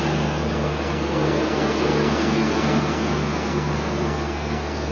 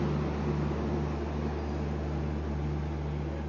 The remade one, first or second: first